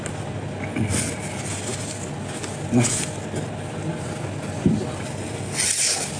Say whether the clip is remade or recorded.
recorded